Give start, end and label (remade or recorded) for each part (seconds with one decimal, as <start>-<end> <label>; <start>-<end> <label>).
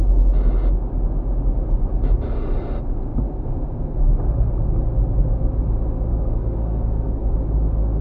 0.0-6.1 recorded; 6.1-7.3 remade; 7.3-8.0 recorded